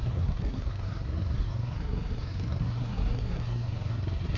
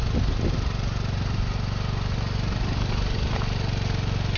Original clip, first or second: second